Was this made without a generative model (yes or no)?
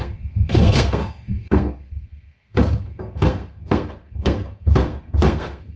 no